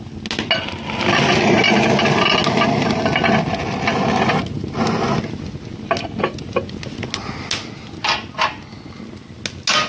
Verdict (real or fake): real